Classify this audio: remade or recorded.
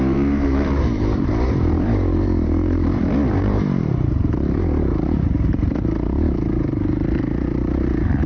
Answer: remade